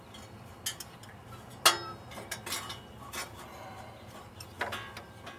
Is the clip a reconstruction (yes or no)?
no